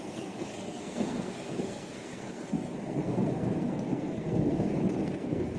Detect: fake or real fake